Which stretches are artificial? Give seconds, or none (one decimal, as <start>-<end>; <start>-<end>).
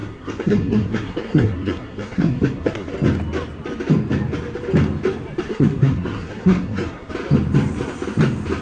0.0-2.9; 5.5-7.1